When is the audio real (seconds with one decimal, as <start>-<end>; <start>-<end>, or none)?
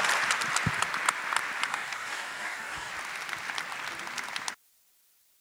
0.0-1.7; 2.9-5.4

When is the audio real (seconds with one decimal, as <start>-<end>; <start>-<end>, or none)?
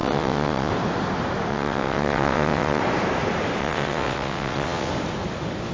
0.7-1.5; 2.8-3.6; 4.9-5.7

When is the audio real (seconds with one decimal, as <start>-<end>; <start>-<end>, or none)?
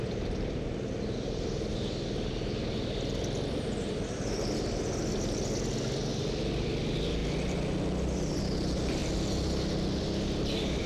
0.0-10.9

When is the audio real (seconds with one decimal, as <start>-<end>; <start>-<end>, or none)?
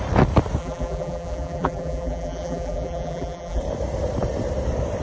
0.0-0.6; 3.6-5.0